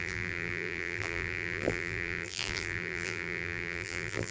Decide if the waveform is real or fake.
fake